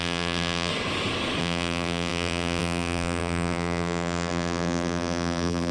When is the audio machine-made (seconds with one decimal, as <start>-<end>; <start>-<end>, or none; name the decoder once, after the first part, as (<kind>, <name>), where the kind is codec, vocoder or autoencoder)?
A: 0.0-0.7 (vocoder, BigVGAN v2); 1.4-5.7